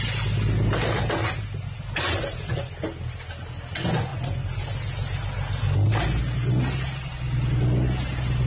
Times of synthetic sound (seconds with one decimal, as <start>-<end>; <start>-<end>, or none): none